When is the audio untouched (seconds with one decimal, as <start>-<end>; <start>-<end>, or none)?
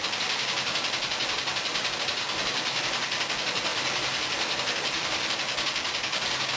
0.0-6.6